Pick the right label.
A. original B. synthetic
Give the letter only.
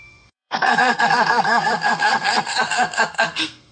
B